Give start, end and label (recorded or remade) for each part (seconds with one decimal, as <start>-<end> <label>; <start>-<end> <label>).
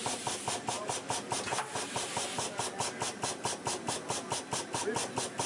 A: 0.0-5.5 recorded